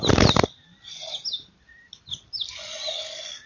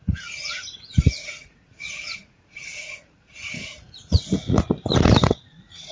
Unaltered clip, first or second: first